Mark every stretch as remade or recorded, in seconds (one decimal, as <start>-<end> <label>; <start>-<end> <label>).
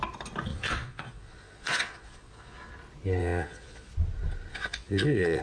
0.0-0.5 recorded; 0.5-2.7 remade; 2.7-3.2 recorded; 3.2-3.9 remade; 3.9-4.5 recorded; 4.5-5.4 remade